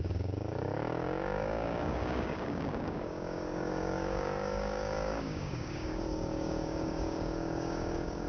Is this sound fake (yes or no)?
yes